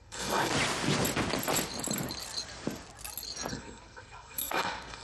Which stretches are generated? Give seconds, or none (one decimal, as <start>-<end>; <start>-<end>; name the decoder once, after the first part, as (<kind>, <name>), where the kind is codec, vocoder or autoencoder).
0.0-0.5 (codec, SNAC); 3.5-5.0